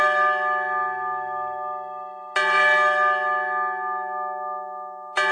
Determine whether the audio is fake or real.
real